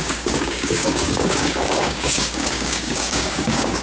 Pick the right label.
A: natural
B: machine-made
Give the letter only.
B